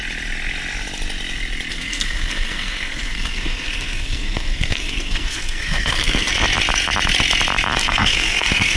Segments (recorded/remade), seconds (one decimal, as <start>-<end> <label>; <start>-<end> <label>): 0.0-1.7 recorded; 1.7-6.3 remade; 6.3-7.8 recorded; 7.8-8.8 remade